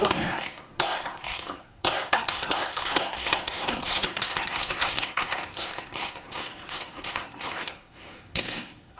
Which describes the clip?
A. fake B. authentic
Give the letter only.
A